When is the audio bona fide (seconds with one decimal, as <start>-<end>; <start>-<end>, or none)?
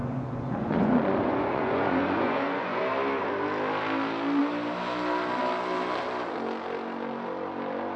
2.8-8.0